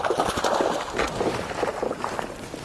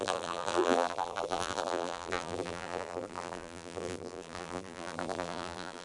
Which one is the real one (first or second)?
first